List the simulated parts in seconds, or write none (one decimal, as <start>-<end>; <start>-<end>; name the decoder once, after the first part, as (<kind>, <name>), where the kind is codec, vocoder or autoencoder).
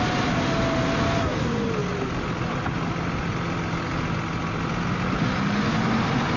none